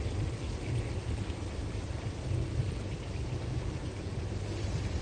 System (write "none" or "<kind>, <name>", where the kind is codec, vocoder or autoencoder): none